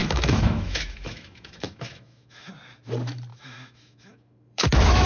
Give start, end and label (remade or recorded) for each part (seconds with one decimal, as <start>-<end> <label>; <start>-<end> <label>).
0.0-2.5 remade; 2.5-3.3 recorded; 3.3-5.1 remade